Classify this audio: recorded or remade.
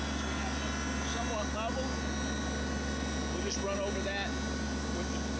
recorded